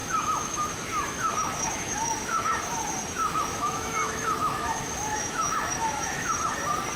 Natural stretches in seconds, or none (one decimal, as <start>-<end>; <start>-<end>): 2.8-3.2; 6.3-7.0